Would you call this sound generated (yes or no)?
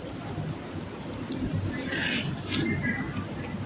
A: no